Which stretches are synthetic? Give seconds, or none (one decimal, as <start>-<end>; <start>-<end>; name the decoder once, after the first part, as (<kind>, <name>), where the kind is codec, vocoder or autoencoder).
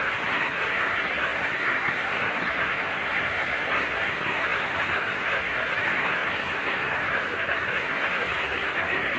0.0-9.2 (codec, SNAC)